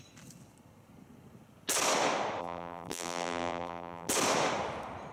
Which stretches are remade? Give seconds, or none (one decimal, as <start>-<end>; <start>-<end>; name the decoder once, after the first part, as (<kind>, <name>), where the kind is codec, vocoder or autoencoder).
2.4-4.1 (vocoder, BigVGAN v2)